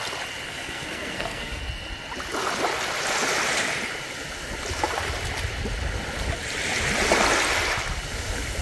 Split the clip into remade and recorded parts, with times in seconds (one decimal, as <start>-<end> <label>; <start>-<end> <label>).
0.0-0.5 recorded; 0.5-1.6 remade; 1.6-8.6 recorded